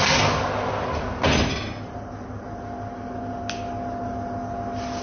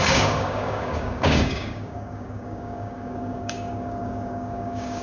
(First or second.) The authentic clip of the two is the first